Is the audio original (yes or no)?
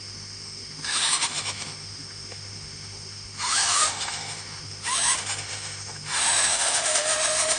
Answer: no